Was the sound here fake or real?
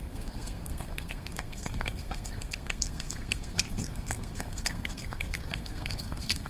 fake